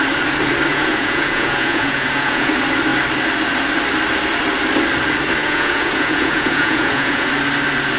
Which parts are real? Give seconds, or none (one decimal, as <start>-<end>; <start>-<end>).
0.0-0.7; 2.5-5.4; 7.3-8.0